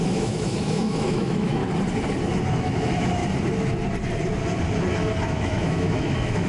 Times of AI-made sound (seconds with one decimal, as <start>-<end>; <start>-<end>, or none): 0.0-1.6; 2.4-3.2; 5.2-6.5